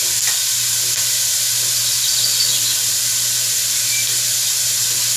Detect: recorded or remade recorded